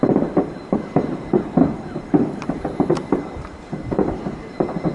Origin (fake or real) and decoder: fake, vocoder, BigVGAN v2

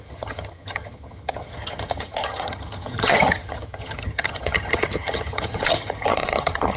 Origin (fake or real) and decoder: fake, vocoder, HiFi-GAN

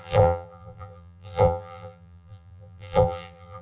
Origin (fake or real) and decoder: fake, vocoder, BigVGAN v2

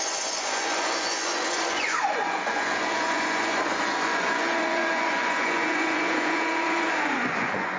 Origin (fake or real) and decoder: fake, vocoder, Vocos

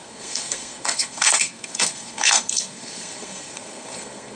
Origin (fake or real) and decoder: fake, codec, SNAC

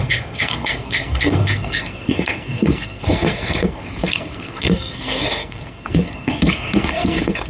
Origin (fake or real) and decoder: fake, codec, SNAC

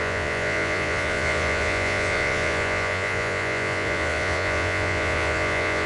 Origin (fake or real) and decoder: fake, vocoder, Vocos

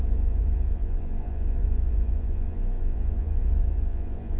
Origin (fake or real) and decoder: fake, vocoder, Vocos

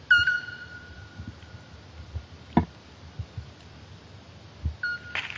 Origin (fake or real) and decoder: real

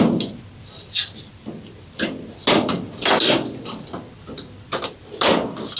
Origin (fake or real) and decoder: real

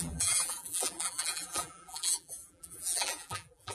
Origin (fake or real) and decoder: fake, vocoder, BigVGAN v2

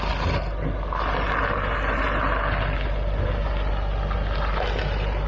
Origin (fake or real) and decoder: real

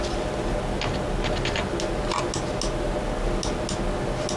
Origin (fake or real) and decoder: real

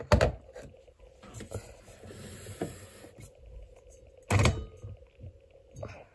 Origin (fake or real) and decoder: real